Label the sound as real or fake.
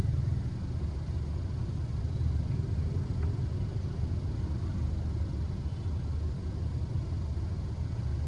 real